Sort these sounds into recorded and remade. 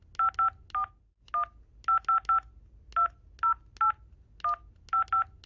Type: recorded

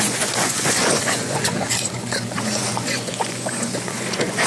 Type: remade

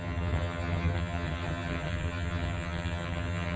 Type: remade